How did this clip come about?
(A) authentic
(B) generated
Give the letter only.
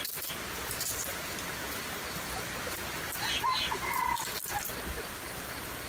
A